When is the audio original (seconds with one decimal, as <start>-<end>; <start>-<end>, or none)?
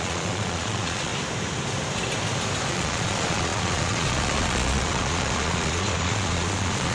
1.1-2.7